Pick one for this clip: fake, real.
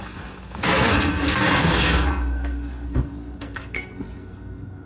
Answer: fake